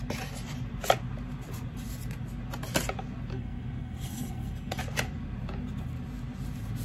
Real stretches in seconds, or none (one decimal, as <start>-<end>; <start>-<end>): 0.0-3.3; 4.8-6.8